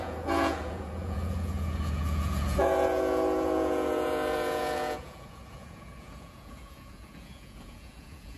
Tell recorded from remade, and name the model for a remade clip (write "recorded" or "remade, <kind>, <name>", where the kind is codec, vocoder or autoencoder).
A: remade, vocoder, Vocos